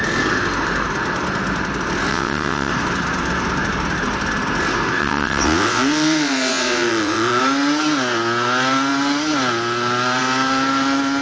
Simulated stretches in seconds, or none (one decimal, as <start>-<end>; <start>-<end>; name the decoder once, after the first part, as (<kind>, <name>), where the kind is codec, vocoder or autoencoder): 2.1-2.7 (vocoder, WaveNeXt); 5.0-7.4